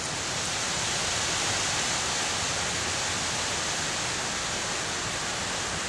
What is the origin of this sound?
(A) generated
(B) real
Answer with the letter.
B